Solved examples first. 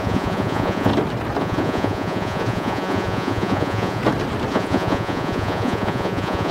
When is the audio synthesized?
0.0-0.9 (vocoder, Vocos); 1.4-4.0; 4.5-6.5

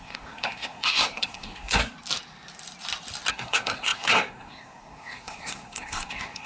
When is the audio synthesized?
0.0-1.8 (codec, SNAC); 3.3-6.5

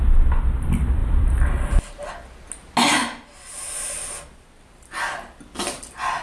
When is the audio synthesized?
1.0-2.1 (vocoder, BigVGAN v2)

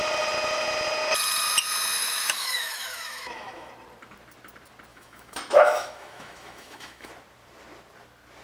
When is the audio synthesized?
2.0-3.7 (autoencoder, DAC-VAE); 4.9-7.1

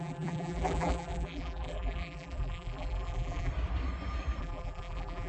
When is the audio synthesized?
0.0-3.5 (vocoder, BigVGAN v2); 4.4-5.3

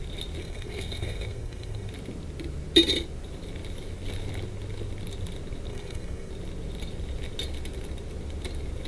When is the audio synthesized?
0.4-1.9 (codec, SNAC); 5.7-6.3

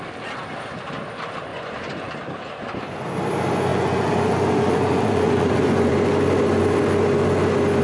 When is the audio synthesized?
1.5-2.1 (vocoder, Vocos); 3.7-5.9